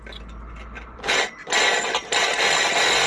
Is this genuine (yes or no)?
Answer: yes